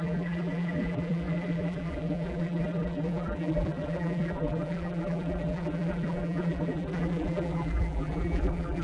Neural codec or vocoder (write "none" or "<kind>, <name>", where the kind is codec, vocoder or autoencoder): vocoder, BigVGAN v2